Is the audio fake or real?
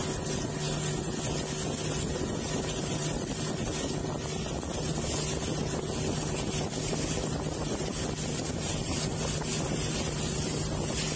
real